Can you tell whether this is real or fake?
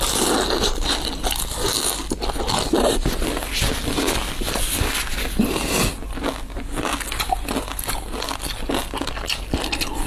real